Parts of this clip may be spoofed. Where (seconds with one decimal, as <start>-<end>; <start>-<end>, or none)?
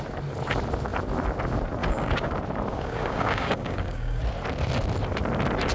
1.8-2.3; 2.7-4.2